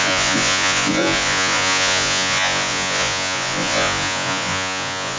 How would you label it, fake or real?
fake